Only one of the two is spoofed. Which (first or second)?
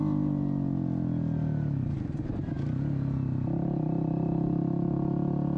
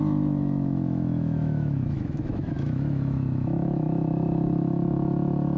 second